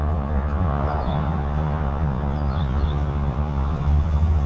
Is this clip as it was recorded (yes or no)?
no